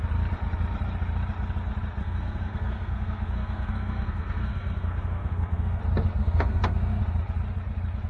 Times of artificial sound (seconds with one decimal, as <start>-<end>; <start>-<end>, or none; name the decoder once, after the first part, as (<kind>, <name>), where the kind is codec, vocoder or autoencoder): 2.0-5.8 (codec, SNAC); 6.2-7.0